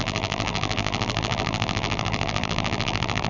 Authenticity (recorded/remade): remade